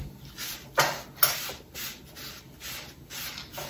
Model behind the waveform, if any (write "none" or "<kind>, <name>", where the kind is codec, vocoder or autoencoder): none